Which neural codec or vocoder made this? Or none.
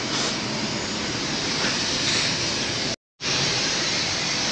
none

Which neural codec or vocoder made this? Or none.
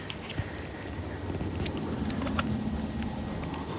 none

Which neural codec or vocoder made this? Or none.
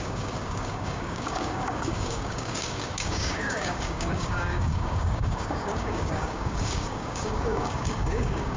codec, DAC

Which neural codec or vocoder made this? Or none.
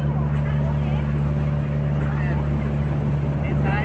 none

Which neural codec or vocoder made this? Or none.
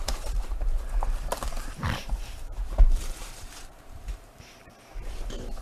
vocoder, BigVGAN v2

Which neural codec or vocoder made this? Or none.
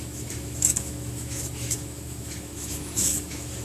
autoencoder, DAC-VAE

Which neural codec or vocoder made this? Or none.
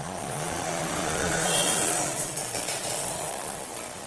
vocoder, Vocos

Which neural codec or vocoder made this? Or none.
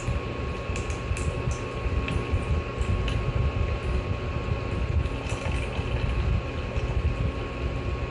none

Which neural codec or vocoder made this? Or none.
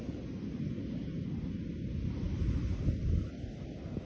none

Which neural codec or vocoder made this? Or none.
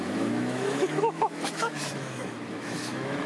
autoencoder, DAC-VAE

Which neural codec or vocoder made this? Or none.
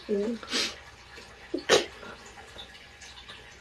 vocoder, Vocos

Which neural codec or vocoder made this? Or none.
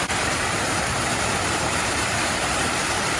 vocoder, BigVGAN v2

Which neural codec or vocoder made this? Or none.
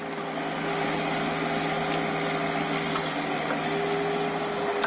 none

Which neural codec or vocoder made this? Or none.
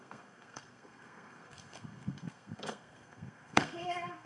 codec, SNAC